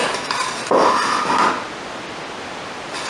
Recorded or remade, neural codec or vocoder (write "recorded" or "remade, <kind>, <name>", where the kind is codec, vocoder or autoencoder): recorded